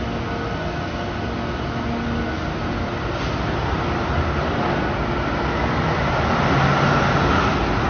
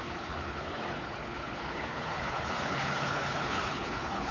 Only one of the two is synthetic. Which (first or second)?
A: second